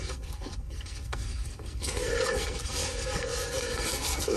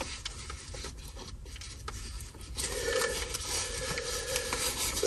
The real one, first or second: second